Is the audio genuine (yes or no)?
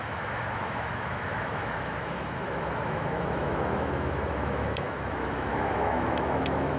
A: no